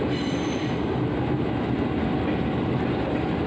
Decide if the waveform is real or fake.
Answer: real